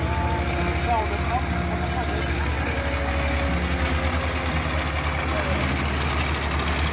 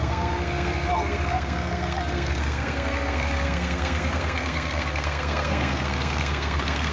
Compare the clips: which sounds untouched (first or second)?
first